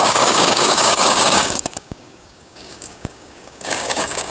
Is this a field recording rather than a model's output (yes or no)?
no